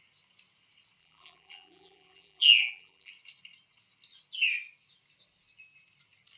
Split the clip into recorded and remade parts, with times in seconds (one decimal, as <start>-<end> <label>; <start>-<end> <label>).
0.0-1.0 recorded; 1.0-3.1 remade; 3.1-6.4 recorded